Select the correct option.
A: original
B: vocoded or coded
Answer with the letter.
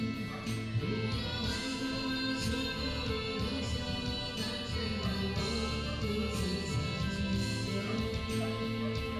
A